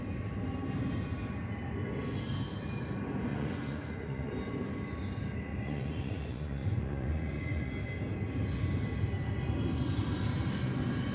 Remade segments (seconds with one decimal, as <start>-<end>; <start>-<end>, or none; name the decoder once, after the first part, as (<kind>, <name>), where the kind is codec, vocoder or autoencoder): 3.3-4.3 (vocoder, Vocos); 5.5-7.7